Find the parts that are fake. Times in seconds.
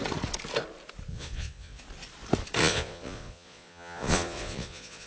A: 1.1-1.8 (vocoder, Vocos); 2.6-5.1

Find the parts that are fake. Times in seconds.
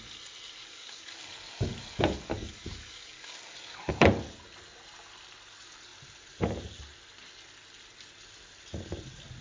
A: 0.6-3.9 (codec, DAC)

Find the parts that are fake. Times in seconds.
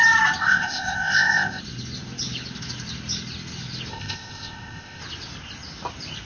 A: 0.4-1.6 (codec, ZipCodec); 3.9-5.0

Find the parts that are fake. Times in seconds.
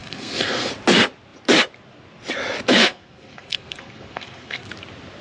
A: 0.0-0.7 (codec, SNAC); 2.8-4.7